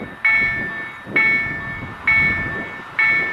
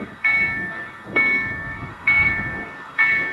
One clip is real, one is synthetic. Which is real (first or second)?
first